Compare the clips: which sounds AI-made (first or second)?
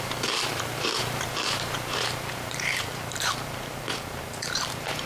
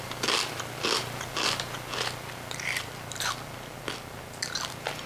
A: first